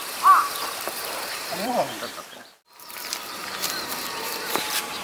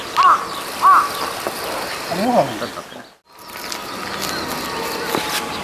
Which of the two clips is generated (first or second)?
first